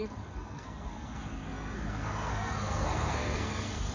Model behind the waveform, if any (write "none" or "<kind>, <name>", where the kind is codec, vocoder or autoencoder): codec, SNAC